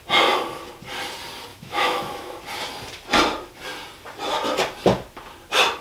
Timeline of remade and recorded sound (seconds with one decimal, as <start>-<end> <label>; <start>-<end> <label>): 0.0-1.5 recorded; 1.5-2.4 remade; 2.4-5.8 recorded